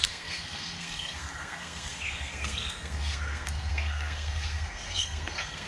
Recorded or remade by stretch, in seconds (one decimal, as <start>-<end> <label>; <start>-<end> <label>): 0.0-5.7 remade